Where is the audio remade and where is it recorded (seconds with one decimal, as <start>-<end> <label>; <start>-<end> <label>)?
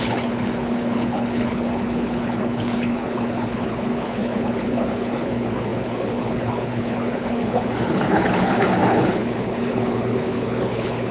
0.0-11.1 remade